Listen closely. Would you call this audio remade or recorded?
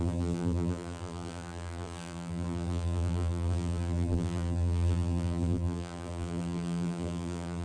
remade